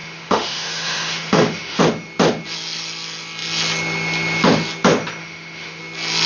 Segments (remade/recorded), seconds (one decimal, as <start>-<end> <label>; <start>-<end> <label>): 0.0-1.8 remade; 1.8-5.2 recorded; 5.2-5.8 remade; 5.8-6.3 recorded